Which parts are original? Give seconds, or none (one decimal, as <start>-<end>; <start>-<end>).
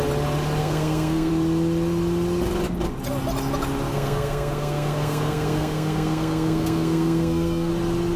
0.0-0.6; 1.3-3.9; 7.7-8.2